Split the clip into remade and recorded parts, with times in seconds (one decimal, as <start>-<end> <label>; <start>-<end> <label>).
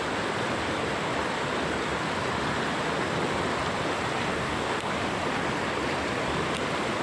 0.0-4.3 recorded; 4.3-4.9 remade; 4.9-7.0 recorded